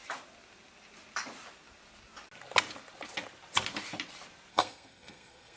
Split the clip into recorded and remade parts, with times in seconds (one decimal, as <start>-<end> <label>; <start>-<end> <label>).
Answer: 0.0-4.5 recorded; 4.5-5.6 remade